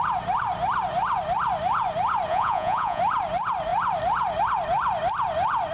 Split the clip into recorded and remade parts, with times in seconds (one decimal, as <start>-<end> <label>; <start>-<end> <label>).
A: 0.0-2.3 recorded; 2.3-3.0 remade; 3.0-5.7 recorded